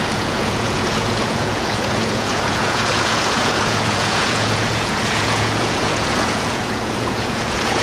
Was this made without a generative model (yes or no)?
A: no